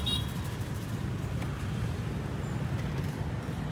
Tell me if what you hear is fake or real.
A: real